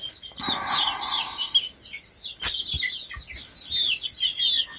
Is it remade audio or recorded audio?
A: recorded